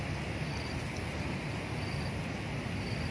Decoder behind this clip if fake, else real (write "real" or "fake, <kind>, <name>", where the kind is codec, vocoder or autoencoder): real